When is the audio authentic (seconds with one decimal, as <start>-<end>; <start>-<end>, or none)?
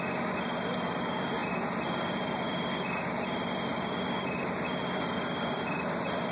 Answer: 0.0-6.3